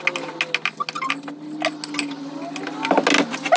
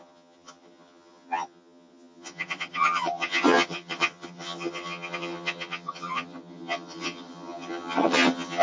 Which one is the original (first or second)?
first